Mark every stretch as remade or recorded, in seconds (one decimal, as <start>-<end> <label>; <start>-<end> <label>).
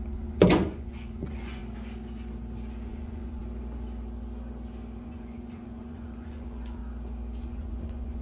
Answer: 0.0-1.6 remade; 1.6-2.9 recorded; 2.9-3.4 remade; 3.4-5.0 recorded; 5.0-6.8 remade; 6.8-7.4 recorded; 7.4-8.2 remade